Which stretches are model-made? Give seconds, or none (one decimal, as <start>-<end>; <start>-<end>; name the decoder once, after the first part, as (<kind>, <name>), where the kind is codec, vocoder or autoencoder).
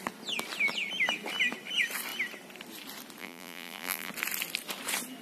3.2-4.1 (vocoder, BigVGAN v2)